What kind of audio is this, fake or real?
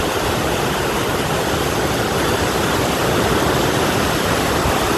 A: real